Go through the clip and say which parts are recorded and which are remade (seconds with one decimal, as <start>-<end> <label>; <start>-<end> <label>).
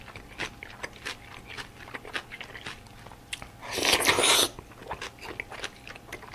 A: 0.0-6.3 recorded